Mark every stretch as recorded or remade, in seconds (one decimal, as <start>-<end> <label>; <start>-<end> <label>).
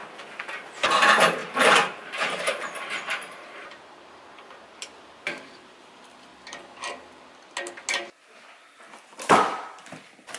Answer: 0.0-0.5 recorded; 0.5-6.3 remade; 6.3-10.4 recorded